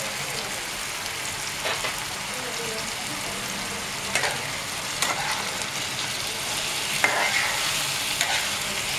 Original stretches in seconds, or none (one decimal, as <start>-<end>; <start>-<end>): 0.0-1.7; 2.2-5.9; 6.5-9.0